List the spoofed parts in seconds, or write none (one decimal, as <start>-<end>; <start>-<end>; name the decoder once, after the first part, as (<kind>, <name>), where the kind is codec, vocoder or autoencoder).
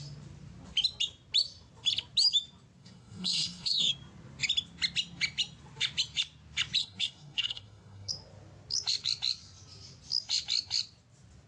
2.8-3.9 (codec, SNAC); 6.8-8.1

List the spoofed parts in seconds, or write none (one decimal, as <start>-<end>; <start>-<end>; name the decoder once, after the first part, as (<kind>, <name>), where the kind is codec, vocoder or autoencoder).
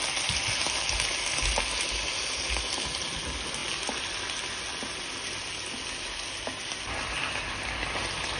none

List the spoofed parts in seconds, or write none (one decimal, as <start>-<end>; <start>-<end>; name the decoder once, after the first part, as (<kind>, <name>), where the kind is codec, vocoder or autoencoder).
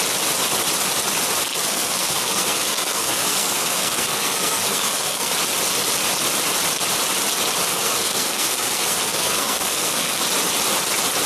1.5-5.3 (codec, SNAC); 7.7-10.2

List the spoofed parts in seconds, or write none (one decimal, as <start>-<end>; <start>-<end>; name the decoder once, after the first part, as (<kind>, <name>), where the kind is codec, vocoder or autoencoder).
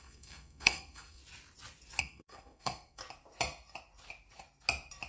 0.0-1.2 (codec, SNAC); 2.0-3.0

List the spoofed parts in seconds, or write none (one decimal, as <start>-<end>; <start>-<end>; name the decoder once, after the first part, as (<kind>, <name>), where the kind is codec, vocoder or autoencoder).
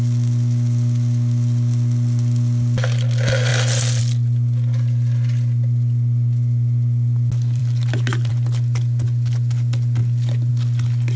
none